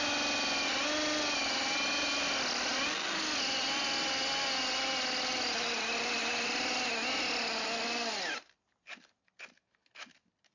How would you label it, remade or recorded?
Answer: recorded